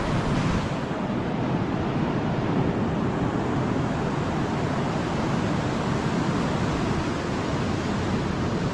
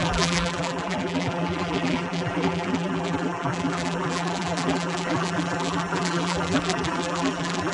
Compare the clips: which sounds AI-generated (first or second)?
second